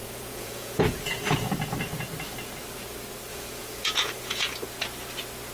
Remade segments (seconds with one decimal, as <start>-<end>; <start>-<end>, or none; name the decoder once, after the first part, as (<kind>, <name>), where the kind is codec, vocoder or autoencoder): 0.0-1.5 (vocoder, Vocos); 3.3-4.5